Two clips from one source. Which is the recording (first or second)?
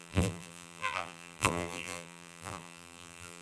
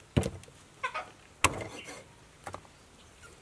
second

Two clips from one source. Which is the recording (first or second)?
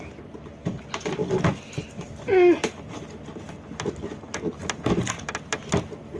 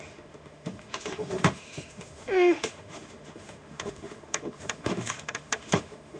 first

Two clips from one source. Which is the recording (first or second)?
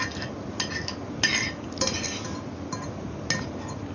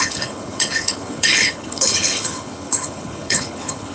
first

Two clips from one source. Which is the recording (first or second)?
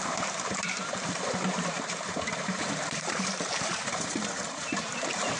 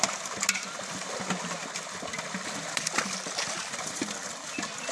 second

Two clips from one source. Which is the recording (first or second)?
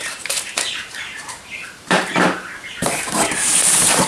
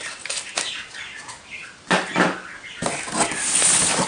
second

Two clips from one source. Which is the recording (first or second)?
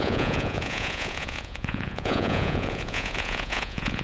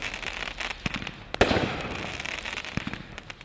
second